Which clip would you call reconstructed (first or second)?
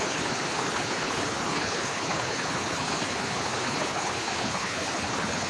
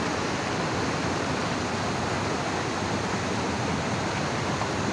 first